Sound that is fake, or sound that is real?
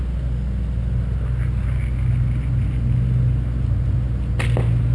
real